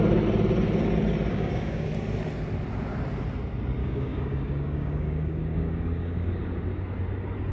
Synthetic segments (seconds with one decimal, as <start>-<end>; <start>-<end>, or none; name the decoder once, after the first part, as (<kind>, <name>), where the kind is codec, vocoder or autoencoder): 1.3-1.9 (codec, DAC); 3.8-6.4